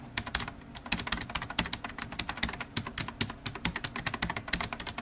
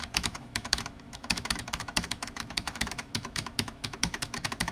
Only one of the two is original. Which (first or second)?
first